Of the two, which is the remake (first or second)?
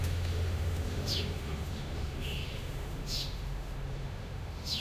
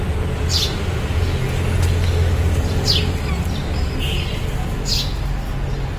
first